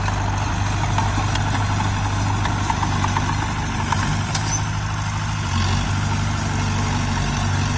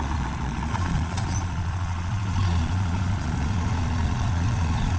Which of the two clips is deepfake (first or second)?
second